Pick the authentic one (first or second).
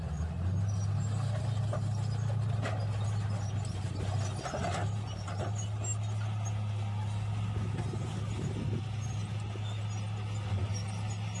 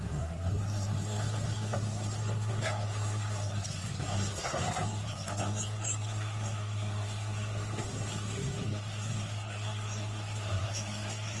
first